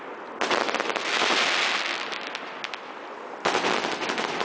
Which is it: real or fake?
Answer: real